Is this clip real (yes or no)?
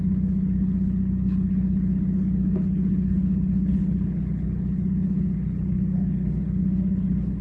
no